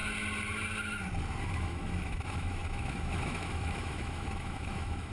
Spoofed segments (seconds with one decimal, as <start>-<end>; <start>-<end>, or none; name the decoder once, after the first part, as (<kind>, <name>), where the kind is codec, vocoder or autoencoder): 1.4-5.1 (autoencoder, DAC-VAE)